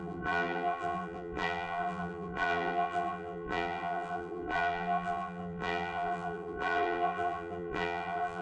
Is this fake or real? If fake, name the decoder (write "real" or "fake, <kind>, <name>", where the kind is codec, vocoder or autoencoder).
fake, vocoder, BigVGAN v2